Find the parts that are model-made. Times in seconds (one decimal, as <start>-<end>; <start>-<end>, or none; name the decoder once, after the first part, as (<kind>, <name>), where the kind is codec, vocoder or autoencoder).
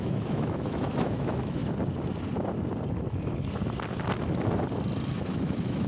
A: 0.0-1.6 (autoencoder, DAC-VAE); 5.1-5.9